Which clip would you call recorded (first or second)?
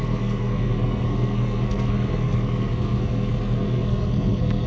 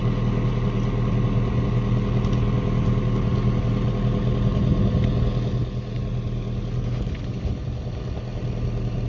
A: second